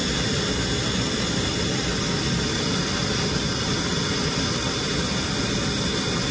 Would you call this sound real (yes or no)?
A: yes